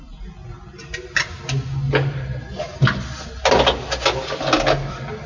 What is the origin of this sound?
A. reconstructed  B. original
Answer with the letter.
B